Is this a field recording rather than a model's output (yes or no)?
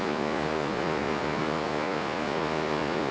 no